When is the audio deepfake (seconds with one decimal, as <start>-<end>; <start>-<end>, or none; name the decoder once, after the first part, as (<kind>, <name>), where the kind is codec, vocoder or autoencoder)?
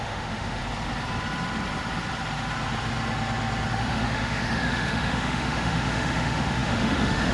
0.0-0.6 (autoencoder, DAC-VAE); 3.7-7.3